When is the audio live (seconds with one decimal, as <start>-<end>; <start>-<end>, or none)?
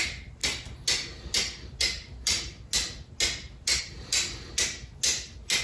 0.0-5.6